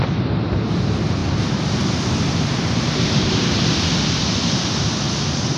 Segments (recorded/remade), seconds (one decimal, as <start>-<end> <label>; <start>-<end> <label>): 0.0-5.6 recorded